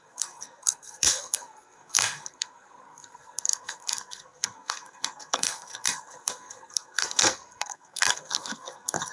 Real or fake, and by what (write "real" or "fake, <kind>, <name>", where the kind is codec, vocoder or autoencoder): fake, codec, SNAC